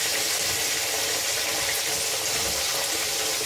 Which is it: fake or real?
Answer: real